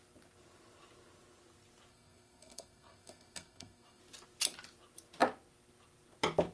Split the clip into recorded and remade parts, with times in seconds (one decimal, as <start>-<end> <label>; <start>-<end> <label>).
0.0-1.9 recorded; 1.9-4.0 remade; 4.0-6.5 recorded